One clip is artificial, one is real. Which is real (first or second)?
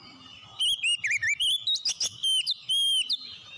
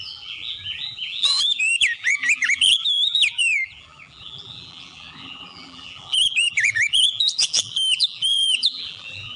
first